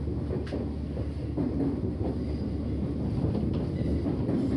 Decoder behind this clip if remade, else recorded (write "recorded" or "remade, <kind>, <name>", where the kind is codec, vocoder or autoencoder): recorded